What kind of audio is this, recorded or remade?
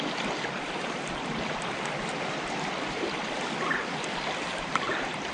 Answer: remade